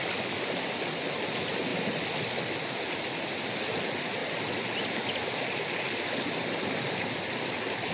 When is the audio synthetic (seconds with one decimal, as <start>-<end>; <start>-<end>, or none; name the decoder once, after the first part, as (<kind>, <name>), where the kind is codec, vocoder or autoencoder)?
0.0-1.7 (vocoder, BigVGAN v2); 3.8-7.9